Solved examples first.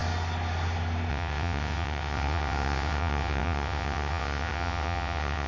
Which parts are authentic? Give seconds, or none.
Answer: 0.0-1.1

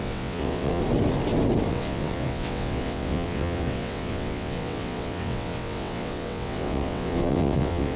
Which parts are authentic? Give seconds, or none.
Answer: 0.8-1.7

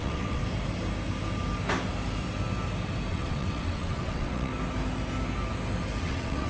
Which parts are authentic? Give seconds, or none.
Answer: 0.4-3.1; 4.5-6.0

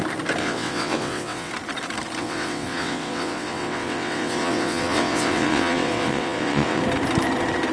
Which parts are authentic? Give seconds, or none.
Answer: 0.0-0.4; 1.5-2.2; 6.8-7.7

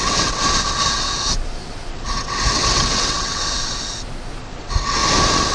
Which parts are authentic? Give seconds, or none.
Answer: 0.4-1.9; 3.4-4.4; 5.0-5.5

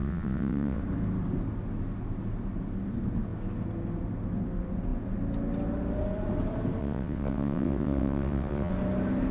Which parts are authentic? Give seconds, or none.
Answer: 0.8-6.8; 8.7-9.3

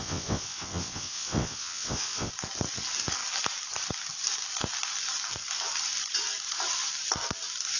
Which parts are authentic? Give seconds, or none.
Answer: 2.3-7.8